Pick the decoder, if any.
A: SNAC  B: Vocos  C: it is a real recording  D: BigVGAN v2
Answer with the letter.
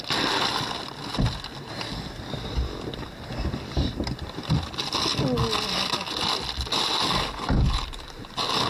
C